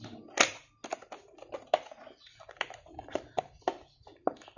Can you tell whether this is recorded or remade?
recorded